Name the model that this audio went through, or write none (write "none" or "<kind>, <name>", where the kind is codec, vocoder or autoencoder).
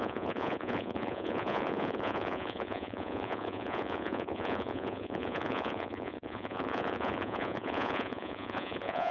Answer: vocoder, Vocos